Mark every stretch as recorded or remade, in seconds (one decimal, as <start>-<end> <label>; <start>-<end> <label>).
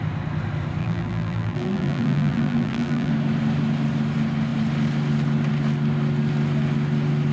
0.0-0.8 recorded; 0.8-3.1 remade; 3.1-7.3 recorded